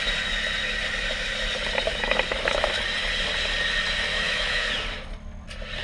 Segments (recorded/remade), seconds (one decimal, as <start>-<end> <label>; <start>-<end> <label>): 0.0-1.9 recorded; 1.9-2.8 remade; 2.8-4.1 recorded; 4.1-4.7 remade; 4.7-5.8 recorded